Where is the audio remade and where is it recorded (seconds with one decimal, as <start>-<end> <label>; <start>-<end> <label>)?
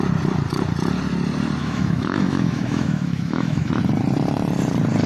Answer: 0.0-1.6 recorded; 1.6-3.7 remade; 3.7-5.1 recorded